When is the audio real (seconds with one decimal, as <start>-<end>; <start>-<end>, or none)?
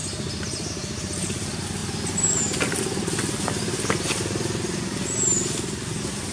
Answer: 0.0-6.3